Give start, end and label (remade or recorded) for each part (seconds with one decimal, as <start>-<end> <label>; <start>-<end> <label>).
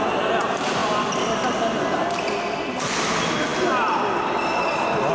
0.0-5.1 recorded